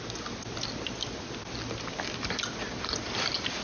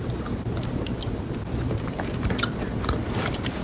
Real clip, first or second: first